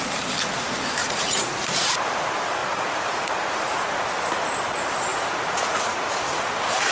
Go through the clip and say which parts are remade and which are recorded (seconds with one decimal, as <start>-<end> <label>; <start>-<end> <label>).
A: 0.0-1.0 recorded; 1.0-1.5 remade; 1.5-2.6 recorded; 2.6-4.1 remade; 4.1-5.1 recorded; 5.1-6.5 remade; 6.5-6.9 recorded